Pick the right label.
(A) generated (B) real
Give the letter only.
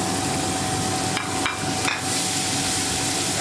B